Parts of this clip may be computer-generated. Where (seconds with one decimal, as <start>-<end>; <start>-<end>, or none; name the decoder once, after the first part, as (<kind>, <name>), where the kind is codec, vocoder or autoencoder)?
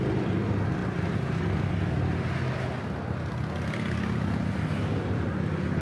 none